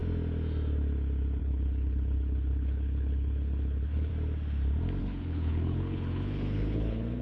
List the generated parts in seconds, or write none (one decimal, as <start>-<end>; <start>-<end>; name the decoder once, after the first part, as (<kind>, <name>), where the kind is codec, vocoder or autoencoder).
1.4-4.1 (codec, HILCodec); 5.0-7.2